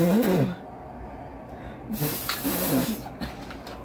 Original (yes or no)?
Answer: yes